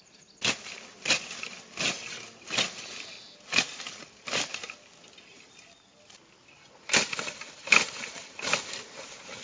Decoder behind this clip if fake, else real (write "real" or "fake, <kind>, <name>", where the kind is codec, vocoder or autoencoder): real